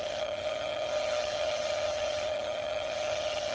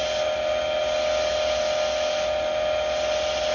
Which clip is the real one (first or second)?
second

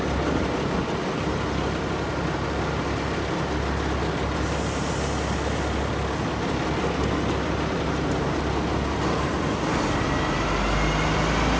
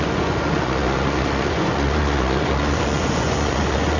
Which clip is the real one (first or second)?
first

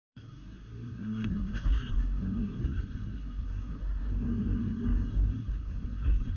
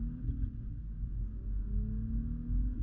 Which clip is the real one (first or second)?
second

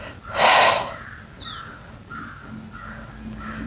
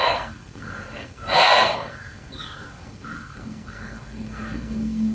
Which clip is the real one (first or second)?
first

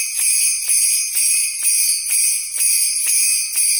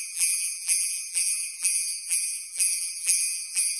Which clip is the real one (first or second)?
first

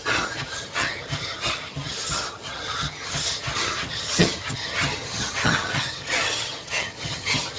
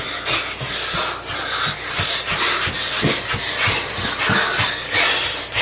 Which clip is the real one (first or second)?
second